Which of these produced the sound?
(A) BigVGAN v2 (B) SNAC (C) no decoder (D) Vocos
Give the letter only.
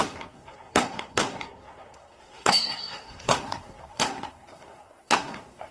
B